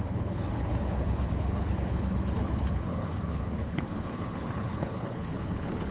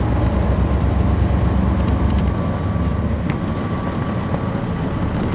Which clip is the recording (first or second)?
second